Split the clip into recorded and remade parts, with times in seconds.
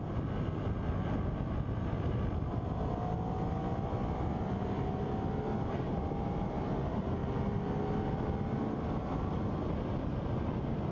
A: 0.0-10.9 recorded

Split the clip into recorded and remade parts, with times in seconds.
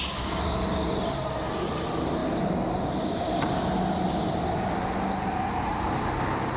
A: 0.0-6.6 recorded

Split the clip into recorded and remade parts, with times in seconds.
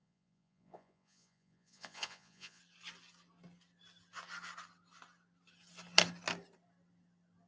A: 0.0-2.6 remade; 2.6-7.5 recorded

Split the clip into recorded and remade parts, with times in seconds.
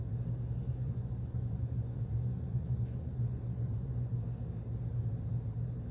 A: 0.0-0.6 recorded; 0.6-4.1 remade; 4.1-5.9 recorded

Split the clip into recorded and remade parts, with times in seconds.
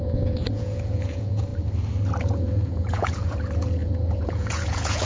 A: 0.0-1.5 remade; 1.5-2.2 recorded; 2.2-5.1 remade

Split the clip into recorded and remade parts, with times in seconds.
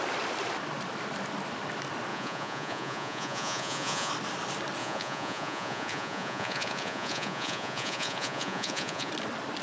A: 0.0-2.1 recorded; 2.1-4.1 remade; 4.1-4.8 recorded; 4.8-9.1 remade; 9.1-9.6 recorded